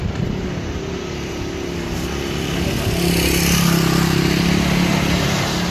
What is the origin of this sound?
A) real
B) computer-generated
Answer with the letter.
A